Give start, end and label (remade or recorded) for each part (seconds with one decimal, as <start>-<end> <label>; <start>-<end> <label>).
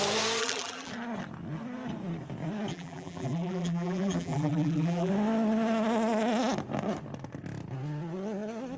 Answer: 0.0-0.4 recorded; 0.4-0.9 remade; 0.9-2.7 recorded; 2.7-5.1 remade; 5.1-8.8 recorded